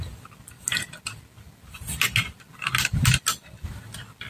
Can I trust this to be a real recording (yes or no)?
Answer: yes